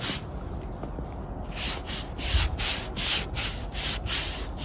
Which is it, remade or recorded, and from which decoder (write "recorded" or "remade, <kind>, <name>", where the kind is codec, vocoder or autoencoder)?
recorded